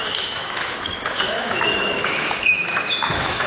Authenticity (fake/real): fake